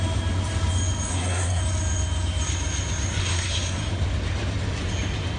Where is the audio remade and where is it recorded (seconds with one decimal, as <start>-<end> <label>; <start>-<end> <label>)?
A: 0.0-1.1 recorded; 1.1-1.6 remade; 1.6-3.2 recorded; 3.2-3.9 remade; 3.9-5.4 recorded